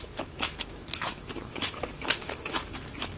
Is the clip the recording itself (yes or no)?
no